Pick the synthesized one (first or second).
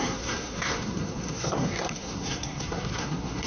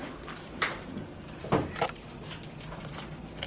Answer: first